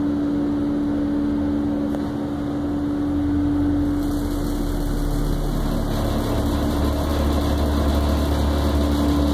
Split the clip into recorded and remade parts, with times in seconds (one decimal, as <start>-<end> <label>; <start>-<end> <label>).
0.0-9.3 recorded